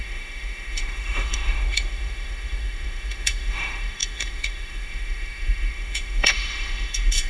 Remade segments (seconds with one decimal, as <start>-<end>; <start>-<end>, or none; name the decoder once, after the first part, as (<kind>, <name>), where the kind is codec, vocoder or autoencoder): 0.0-7.3 (autoencoder, DAC-VAE)